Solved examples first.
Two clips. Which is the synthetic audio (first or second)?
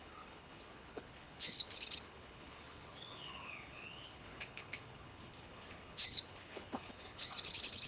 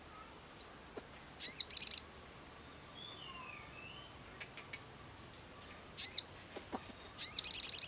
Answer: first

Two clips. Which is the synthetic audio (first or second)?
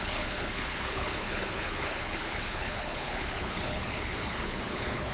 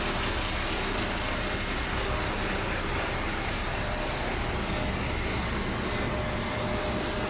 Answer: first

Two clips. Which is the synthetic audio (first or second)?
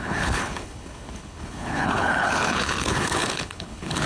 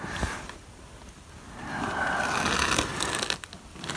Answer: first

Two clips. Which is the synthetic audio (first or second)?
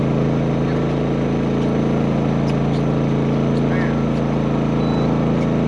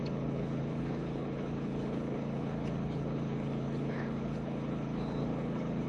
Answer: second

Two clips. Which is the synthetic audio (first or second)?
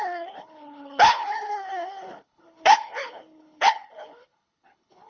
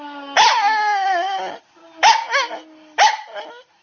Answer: first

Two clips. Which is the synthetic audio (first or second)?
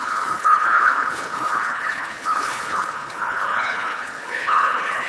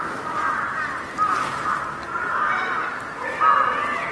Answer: first